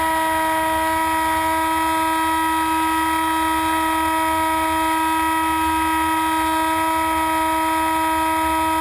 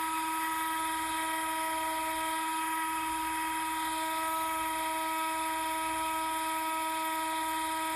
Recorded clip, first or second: first